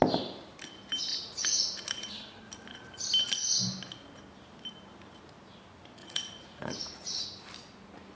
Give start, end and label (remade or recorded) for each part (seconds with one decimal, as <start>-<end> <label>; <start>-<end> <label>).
0.0-1.1 recorded; 1.1-2.1 remade; 2.1-6.0 recorded; 6.0-7.2 remade; 7.2-8.2 recorded